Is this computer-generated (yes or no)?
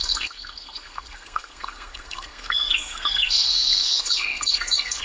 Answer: yes